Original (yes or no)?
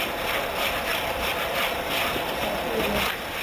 yes